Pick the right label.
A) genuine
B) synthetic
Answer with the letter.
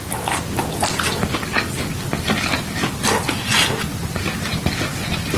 A